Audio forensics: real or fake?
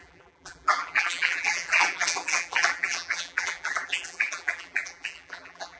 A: fake